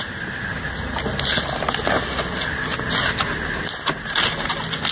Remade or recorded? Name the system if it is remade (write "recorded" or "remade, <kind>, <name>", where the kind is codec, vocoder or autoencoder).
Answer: recorded